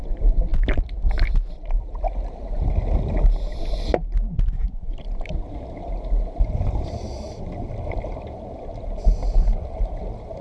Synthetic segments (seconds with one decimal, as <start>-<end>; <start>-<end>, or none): 0.5-2.0